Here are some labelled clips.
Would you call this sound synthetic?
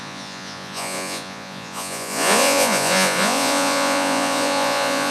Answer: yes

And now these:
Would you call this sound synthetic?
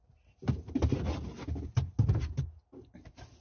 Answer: no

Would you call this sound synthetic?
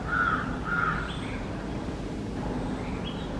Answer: no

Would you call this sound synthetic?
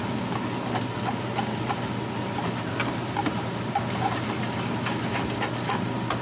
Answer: no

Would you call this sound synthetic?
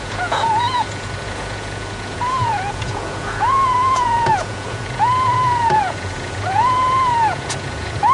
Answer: yes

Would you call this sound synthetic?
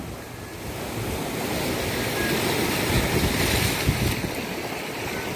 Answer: no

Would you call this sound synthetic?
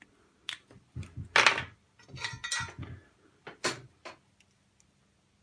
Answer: no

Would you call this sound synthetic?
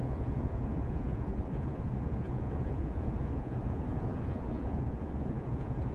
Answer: yes